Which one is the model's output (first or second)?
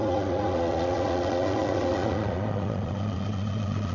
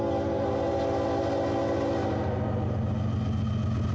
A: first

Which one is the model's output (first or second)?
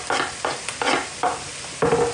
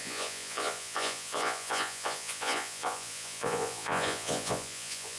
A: second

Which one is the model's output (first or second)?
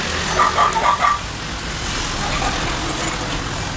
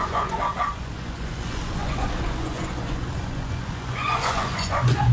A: second